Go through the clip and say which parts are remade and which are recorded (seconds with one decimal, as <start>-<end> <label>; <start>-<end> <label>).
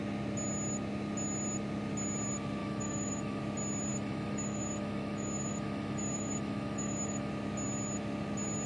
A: 0.0-2.6 recorded; 2.6-3.4 remade; 3.4-3.9 recorded; 3.9-7.3 remade; 7.3-8.7 recorded